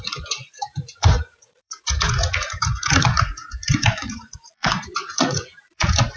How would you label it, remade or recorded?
remade